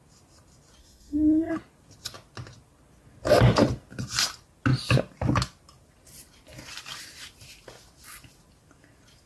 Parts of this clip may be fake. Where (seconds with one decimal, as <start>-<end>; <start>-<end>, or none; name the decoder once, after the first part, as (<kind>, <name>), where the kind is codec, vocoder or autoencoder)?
0.8-1.5 (codec, SNAC)